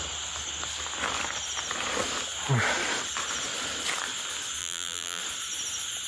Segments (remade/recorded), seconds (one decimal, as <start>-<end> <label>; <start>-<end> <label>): 0.0-4.6 recorded; 4.6-5.2 remade; 5.2-6.1 recorded